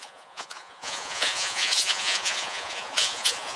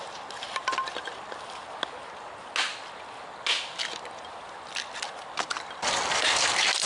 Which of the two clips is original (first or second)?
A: second